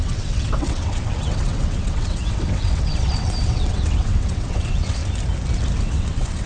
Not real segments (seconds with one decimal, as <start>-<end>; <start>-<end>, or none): 0.0-5.0; 5.8-6.5